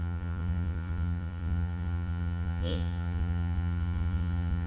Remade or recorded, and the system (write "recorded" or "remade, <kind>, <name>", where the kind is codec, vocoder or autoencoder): remade, vocoder, Vocos